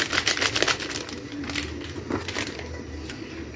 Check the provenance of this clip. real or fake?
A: real